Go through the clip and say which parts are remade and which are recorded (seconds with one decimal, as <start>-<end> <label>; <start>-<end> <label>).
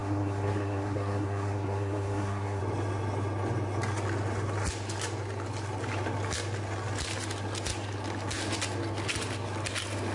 0.0-2.6 remade; 2.6-10.1 recorded